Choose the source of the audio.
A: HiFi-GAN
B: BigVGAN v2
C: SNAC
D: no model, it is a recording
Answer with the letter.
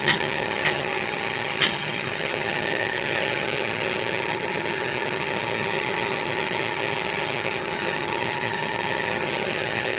A